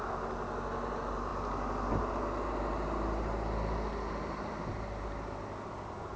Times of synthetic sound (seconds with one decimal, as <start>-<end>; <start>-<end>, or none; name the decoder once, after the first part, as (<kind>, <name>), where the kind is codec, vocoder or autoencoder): none